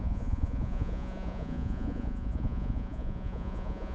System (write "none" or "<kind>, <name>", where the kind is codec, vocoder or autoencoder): vocoder, Vocos